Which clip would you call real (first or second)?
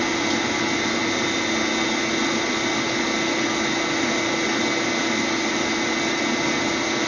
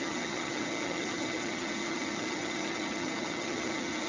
first